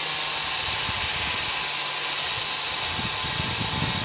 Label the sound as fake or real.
real